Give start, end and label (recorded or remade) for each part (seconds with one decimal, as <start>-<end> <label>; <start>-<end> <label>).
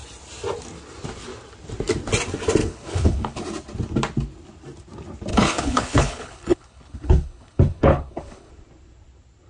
0.0-2.6 recorded; 2.6-3.4 remade; 3.4-5.3 recorded; 5.3-8.5 remade; 8.5-9.5 recorded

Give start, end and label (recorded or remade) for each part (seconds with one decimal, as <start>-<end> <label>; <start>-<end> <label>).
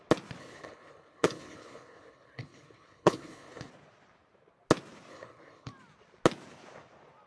0.0-0.4 recorded; 0.4-3.7 remade; 3.7-5.1 recorded; 5.1-5.7 remade; 5.7-7.3 recorded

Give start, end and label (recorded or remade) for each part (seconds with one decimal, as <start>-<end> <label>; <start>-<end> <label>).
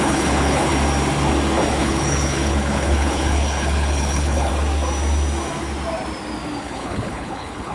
0.0-0.7 remade; 0.7-1.8 recorded; 1.8-4.5 remade; 4.5-6.6 recorded; 6.6-7.7 remade